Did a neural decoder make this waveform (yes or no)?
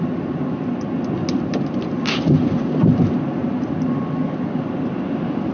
no